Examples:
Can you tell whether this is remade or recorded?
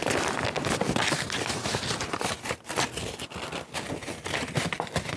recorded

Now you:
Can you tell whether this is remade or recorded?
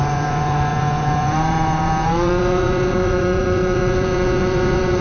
remade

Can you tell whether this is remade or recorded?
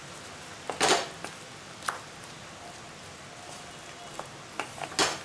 recorded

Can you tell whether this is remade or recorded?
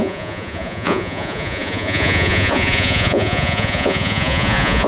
remade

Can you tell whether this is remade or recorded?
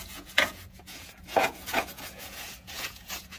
remade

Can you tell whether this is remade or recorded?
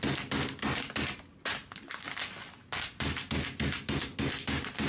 recorded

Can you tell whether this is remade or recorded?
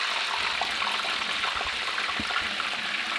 recorded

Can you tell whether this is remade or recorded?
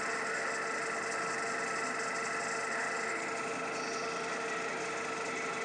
recorded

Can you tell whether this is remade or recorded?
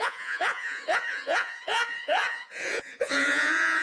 remade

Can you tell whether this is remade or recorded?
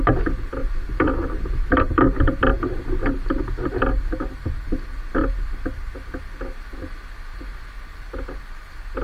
recorded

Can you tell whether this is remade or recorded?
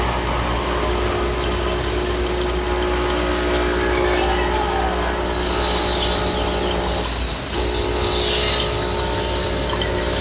recorded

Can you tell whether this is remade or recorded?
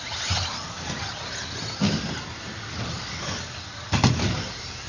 recorded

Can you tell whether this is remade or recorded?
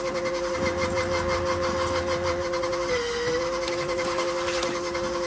recorded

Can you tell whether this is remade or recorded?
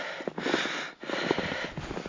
recorded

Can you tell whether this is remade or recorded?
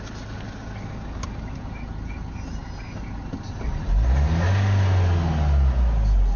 recorded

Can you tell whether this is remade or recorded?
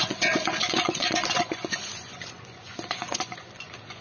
remade